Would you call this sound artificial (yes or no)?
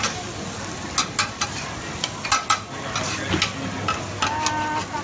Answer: no